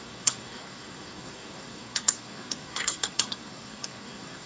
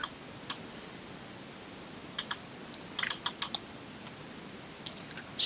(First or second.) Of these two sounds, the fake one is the first